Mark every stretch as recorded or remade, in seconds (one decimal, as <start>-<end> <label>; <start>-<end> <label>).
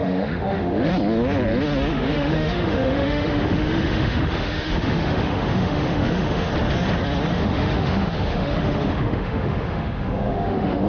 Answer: 0.0-0.9 remade; 0.9-1.9 recorded; 1.9-6.5 remade; 6.5-7.3 recorded; 7.3-10.9 remade